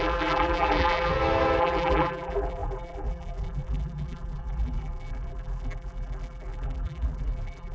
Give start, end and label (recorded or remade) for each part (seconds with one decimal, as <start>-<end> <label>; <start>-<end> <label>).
0.0-1.1 remade; 1.1-1.6 recorded; 1.6-7.7 remade